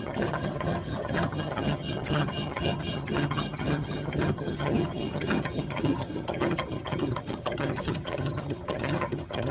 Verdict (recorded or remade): remade